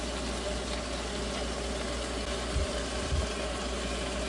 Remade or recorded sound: recorded